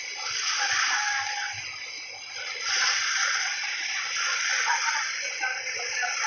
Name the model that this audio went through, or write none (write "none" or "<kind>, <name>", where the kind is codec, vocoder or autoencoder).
none